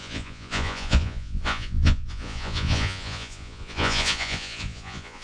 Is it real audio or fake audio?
fake